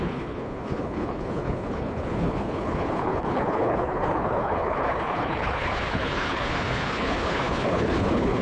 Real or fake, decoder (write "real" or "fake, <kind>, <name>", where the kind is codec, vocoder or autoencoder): fake, codec, HILCodec